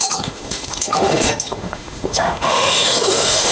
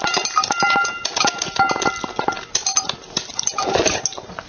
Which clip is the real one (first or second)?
second